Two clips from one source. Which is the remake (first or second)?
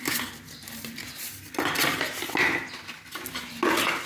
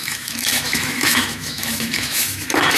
second